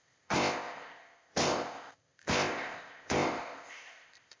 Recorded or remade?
remade